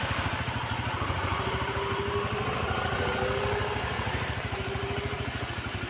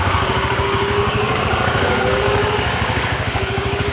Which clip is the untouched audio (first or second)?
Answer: first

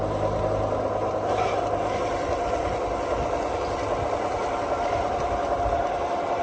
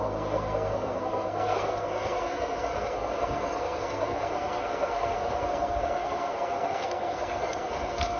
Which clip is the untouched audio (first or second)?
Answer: first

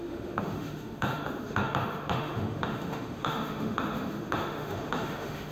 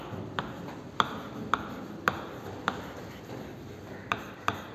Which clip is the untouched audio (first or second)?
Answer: second